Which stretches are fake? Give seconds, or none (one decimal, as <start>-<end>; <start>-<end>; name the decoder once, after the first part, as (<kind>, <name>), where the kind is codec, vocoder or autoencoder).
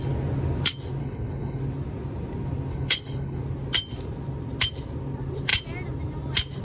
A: 1.0-1.6 (codec, HILCodec); 2.7-3.4